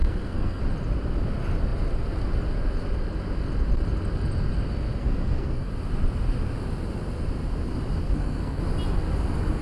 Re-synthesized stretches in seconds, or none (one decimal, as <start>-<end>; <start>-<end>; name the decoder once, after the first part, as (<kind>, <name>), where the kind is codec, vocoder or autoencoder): 0.0-0.6 (codec, SNAC); 5.0-5.7; 8.0-8.6